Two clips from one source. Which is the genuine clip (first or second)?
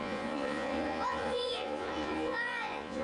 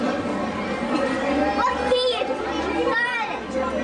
second